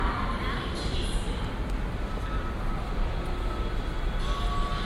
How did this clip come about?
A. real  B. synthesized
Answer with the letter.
A